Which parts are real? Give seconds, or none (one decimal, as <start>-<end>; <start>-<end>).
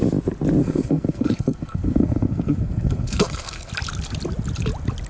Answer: 0.0-0.6; 3.7-5.1